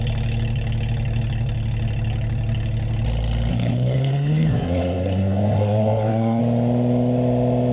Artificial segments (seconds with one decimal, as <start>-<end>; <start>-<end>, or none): 3.5-6.4